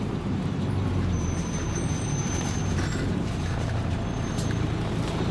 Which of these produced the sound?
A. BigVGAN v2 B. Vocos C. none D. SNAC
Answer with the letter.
A